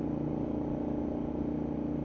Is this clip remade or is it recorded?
recorded